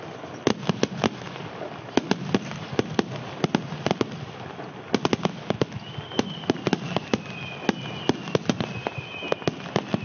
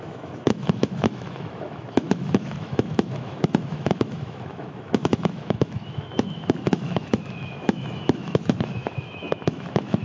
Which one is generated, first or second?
second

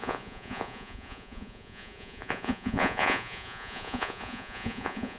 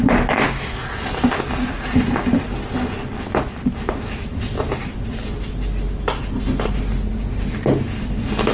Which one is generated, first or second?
first